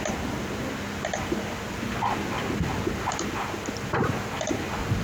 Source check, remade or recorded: recorded